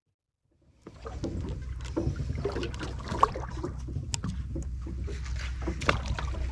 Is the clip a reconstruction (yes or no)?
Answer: no